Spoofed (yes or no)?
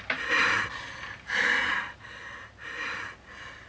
no